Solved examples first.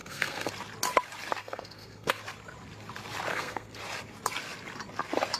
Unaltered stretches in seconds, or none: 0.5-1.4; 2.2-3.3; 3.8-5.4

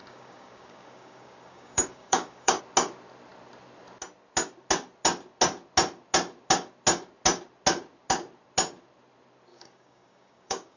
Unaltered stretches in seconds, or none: 2.6-9.5

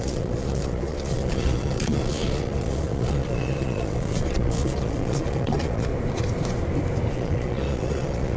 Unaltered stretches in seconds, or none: 5.9-7.1

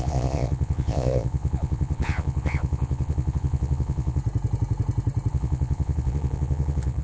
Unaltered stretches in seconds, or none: 4.2-5.3

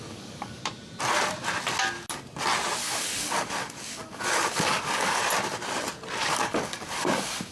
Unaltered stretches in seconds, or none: 0.6-2.8; 5.2-6.2

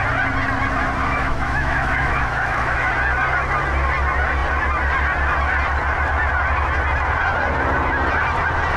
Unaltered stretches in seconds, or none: 0.0-1.0; 2.9-8.8

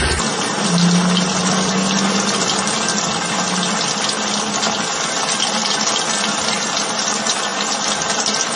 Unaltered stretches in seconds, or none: 0.0-8.6

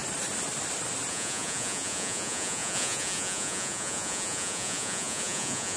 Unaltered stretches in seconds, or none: 0.0-1.1